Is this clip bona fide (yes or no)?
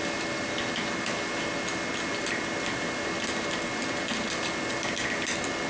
yes